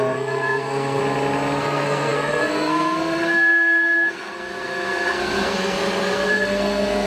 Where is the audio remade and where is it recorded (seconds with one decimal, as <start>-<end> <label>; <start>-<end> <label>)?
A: 0.0-1.0 remade; 1.0-1.6 recorded; 1.6-7.1 remade